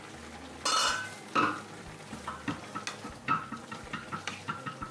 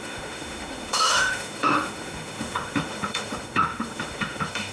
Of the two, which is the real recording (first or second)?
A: first